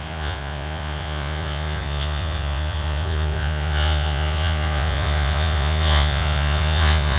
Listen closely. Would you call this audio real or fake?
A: fake